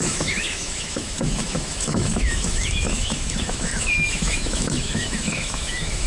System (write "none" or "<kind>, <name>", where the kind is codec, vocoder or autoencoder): autoencoder, DAC-VAE